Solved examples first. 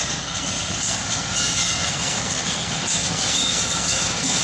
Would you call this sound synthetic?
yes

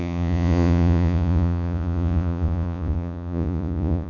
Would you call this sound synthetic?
yes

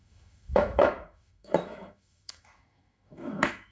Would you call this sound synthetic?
yes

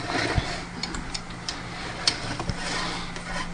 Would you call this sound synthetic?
no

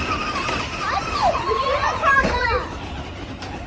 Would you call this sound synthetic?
yes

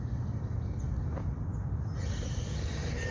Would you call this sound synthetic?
no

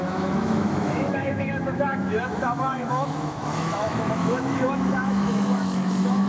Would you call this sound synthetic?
yes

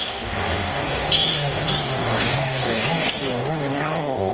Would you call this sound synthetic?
yes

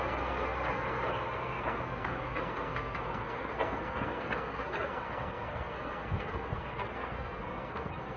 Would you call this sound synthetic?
yes